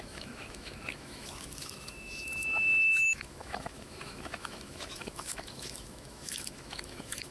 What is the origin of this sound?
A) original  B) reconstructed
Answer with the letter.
B